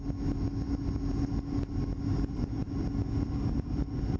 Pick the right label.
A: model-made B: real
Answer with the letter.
B